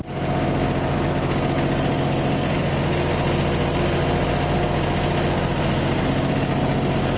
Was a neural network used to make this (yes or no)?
no